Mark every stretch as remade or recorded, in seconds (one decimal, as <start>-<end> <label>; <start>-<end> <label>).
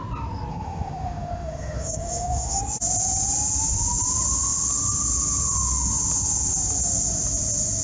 0.0-0.5 recorded; 0.5-2.6 remade; 2.6-7.8 recorded